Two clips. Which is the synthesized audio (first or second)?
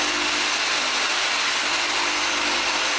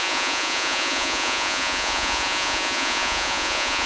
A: second